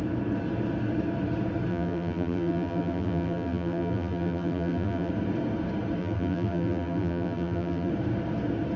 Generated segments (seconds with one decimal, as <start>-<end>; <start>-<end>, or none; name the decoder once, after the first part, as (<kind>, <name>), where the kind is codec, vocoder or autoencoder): 1.7-5.1 (vocoder, BigVGAN v2); 6.0-7.9